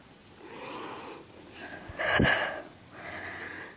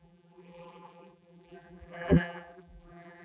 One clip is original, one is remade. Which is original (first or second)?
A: first